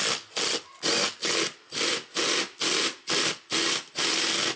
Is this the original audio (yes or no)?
yes